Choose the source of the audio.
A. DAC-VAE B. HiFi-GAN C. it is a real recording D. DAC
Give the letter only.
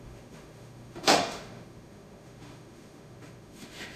A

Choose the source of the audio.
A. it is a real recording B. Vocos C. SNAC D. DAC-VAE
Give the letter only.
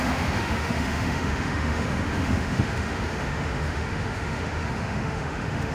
D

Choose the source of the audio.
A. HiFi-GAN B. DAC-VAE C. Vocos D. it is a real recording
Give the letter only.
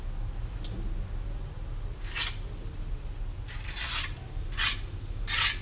D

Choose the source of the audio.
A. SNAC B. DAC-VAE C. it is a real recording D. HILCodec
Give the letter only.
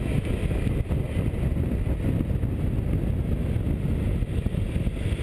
C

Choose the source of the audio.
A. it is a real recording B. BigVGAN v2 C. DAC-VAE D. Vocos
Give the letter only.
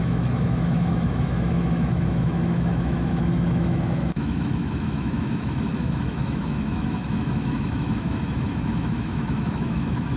C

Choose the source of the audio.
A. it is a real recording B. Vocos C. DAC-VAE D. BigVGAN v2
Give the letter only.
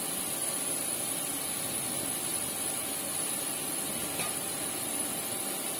A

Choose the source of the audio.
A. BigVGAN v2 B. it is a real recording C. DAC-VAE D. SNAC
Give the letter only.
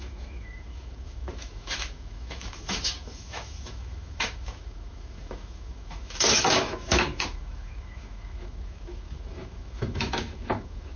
C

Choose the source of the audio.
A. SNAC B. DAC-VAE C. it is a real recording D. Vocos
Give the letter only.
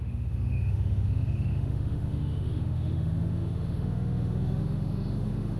B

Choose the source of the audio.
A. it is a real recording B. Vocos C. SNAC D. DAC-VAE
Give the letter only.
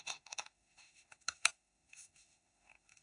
D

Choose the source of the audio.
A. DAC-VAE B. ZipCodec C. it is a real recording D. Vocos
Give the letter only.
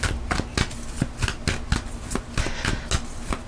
C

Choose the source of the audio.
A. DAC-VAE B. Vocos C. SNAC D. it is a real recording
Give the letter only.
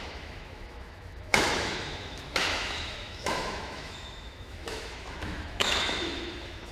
A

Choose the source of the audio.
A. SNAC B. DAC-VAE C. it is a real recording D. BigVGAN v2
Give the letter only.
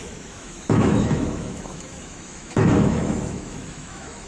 B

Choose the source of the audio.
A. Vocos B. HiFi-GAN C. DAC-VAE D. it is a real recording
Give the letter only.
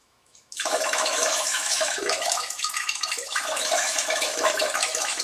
C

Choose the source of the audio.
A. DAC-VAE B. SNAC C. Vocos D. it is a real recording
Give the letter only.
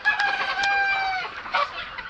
D